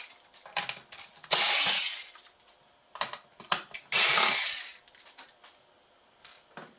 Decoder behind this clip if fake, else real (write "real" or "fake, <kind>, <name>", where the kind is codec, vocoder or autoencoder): real